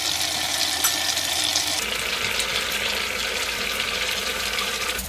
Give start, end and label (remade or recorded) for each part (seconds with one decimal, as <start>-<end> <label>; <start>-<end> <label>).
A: 0.0-2.5 recorded; 2.5-5.1 remade